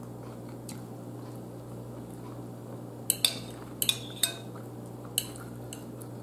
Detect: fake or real real